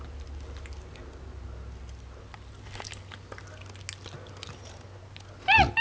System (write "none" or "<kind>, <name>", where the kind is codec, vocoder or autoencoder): none